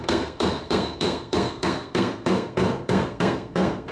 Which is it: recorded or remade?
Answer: remade